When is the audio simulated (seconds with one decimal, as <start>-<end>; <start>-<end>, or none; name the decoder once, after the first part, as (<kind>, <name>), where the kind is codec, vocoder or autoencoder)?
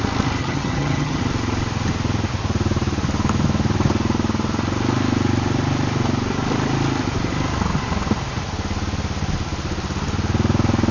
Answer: 0.4-1.2 (vocoder, HiFi-GAN)